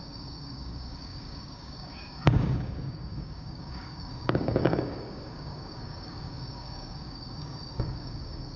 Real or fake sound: fake